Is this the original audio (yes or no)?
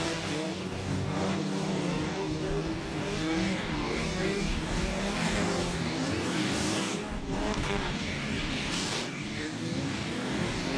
no